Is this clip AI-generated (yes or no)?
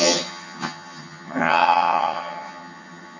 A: yes